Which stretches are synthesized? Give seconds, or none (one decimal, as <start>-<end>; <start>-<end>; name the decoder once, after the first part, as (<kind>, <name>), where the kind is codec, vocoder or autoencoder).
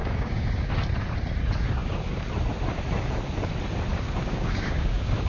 0.0-0.7 (codec, DAC); 3.9-5.3